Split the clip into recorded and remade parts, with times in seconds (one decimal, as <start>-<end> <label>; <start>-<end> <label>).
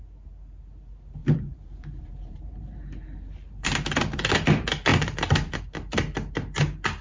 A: 0.0-1.2 recorded; 1.2-2.8 remade; 2.8-3.4 recorded; 3.4-4.3 remade; 4.3-4.9 recorded; 4.9-5.6 remade; 5.6-7.0 recorded